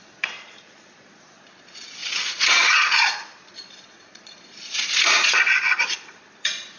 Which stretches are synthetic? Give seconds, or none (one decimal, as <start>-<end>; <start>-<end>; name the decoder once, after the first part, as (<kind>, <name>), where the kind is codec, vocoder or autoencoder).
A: 0.0-6.8 (vocoder, Vocos)